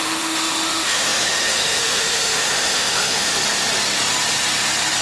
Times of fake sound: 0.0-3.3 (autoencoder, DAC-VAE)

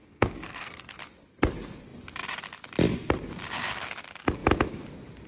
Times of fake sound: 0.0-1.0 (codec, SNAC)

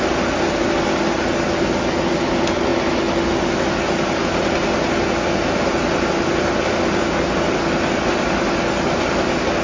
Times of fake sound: none

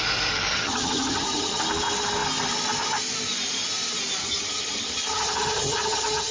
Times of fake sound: 0.5-1.6 (vocoder, HiFi-GAN); 4.2-6.3

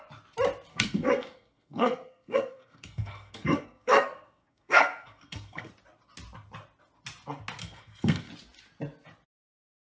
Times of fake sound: 0.7-5.7 (codec, SNAC); 7.6-8.3

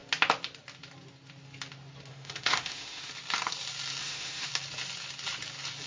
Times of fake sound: 2.1-3.1 (autoencoder, DAC-VAE); 4.0-4.5

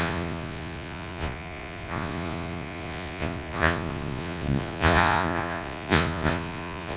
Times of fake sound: 0.0-7.0 (vocoder, Vocos)